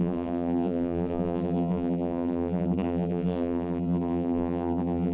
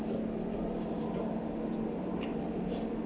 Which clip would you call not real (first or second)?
first